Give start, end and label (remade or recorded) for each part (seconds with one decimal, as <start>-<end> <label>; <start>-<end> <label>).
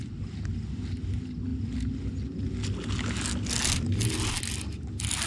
0.0-5.3 recorded